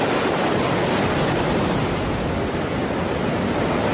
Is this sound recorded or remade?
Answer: recorded